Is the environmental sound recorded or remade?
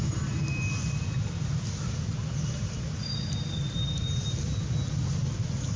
recorded